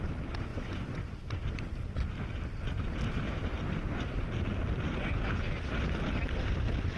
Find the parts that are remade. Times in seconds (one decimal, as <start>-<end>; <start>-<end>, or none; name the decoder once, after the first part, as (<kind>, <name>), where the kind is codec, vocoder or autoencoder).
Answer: 0.5-1.0 (vocoder, Vocos)